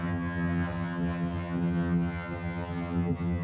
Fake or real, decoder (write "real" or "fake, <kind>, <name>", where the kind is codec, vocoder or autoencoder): fake, vocoder, HiFi-GAN